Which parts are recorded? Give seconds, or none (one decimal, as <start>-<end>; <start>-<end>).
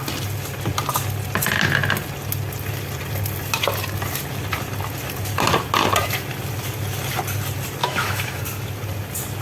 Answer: 0.0-7.8; 8.4-9.4